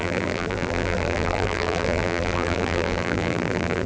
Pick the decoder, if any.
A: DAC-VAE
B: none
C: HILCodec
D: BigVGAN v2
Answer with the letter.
D